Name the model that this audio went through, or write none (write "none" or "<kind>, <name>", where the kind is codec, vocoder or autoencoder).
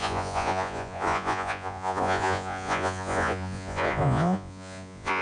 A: vocoder, Vocos